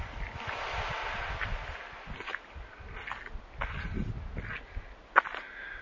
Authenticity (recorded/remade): remade